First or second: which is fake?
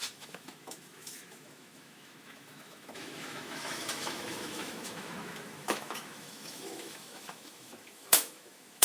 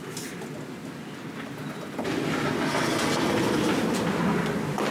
first